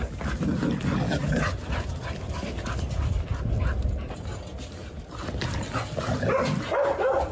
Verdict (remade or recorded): recorded